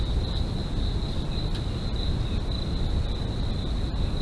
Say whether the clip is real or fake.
real